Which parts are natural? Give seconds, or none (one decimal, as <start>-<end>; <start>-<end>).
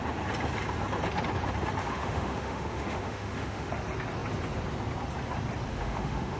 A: 0.0-1.8; 3.7-5.7